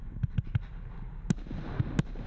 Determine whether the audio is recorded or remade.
recorded